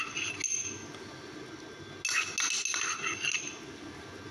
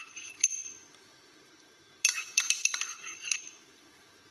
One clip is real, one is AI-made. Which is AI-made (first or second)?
second